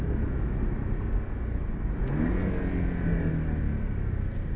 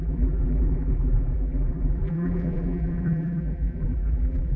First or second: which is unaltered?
first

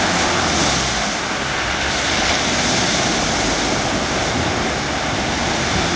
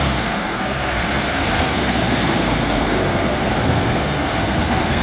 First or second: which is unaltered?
first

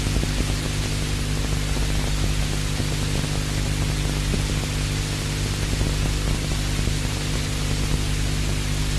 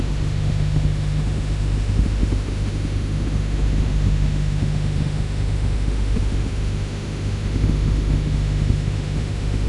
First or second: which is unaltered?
first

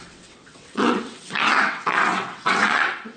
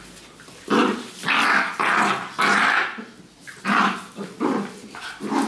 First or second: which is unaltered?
second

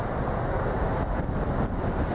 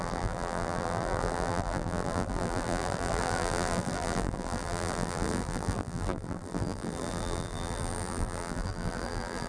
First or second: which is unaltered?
first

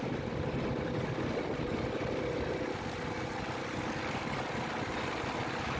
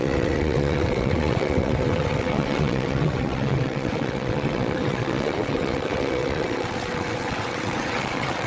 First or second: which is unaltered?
first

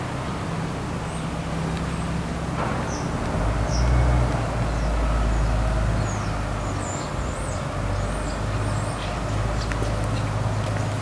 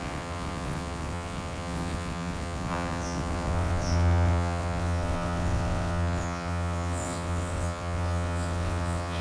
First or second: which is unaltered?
first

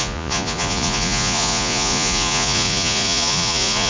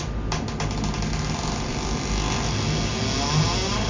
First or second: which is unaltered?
second